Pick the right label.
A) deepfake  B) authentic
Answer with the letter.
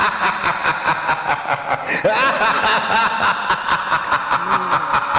B